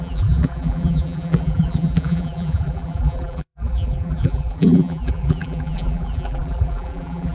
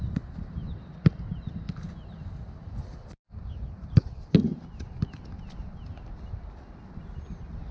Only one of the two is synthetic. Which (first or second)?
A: first